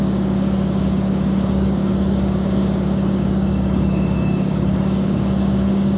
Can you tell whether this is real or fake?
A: fake